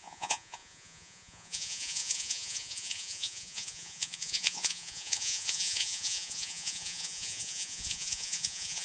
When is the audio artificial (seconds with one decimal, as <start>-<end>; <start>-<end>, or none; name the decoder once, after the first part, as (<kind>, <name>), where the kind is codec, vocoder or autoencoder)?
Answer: 0.0-8.8 (vocoder, Vocos)